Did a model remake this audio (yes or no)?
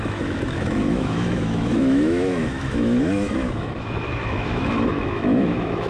yes